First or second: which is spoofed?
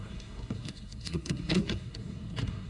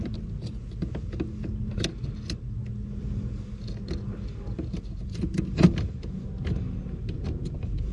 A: first